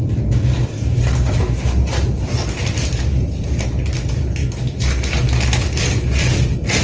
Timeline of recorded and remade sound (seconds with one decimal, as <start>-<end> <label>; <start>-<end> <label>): 0.0-6.8 recorded